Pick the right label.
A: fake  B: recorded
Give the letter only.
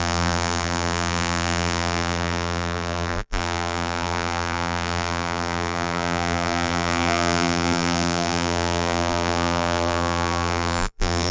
A